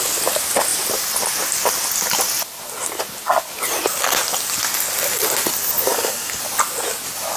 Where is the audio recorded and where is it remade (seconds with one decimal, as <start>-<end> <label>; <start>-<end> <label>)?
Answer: 0.0-5.9 recorded; 5.9-6.4 remade; 6.4-7.4 recorded